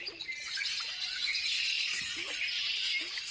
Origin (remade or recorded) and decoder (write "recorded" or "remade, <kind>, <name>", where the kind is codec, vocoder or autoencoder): recorded